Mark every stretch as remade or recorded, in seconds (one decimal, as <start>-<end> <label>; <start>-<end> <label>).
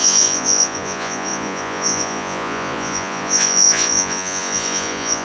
0.0-5.2 remade